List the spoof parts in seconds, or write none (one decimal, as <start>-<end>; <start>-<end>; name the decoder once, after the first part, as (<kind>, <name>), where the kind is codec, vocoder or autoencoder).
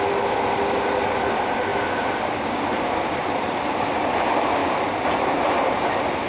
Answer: 1.7-4.1 (vocoder, BigVGAN v2)